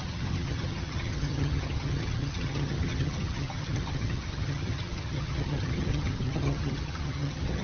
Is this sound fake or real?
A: fake